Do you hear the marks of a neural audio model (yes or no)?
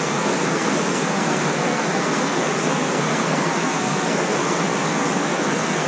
yes